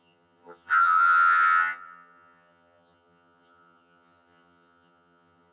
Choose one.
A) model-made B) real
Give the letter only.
A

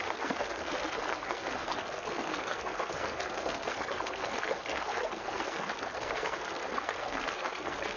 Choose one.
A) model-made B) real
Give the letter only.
A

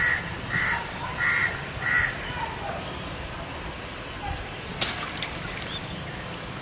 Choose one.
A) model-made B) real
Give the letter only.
A